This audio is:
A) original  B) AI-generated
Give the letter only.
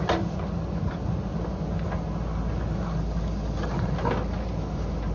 A